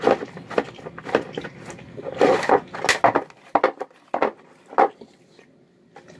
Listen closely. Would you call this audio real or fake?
real